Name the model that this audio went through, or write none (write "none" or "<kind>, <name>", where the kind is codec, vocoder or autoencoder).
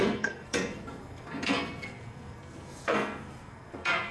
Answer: codec, SNAC